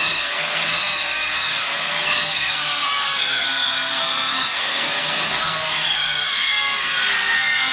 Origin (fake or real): fake